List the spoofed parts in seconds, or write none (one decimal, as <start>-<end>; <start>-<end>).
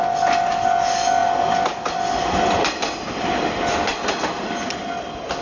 none